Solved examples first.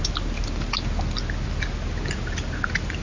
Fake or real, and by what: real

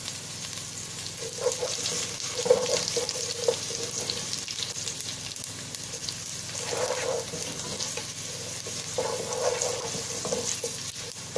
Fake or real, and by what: real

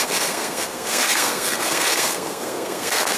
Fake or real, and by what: fake, codec, SNAC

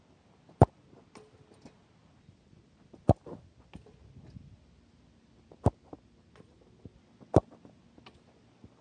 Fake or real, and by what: real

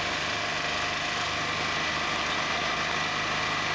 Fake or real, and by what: real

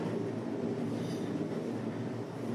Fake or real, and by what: real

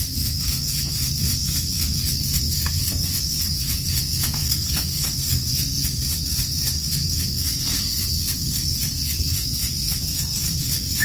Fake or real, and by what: fake, codec, SNAC